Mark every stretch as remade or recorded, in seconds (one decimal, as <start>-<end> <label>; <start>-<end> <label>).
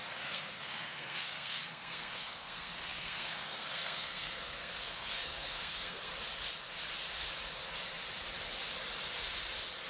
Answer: 0.0-6.1 remade; 6.1-9.9 recorded